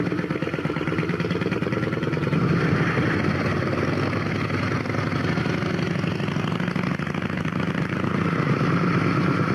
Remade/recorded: recorded